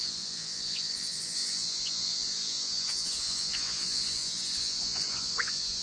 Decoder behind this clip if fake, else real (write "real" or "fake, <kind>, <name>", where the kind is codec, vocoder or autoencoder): fake, vocoder, Vocos